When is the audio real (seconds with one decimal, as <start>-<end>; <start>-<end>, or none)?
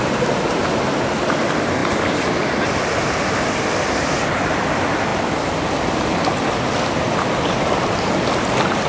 0.0-8.9